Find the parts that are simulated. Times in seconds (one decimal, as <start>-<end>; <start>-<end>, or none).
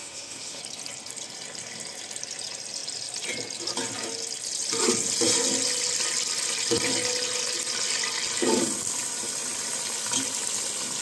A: 0.0-0.6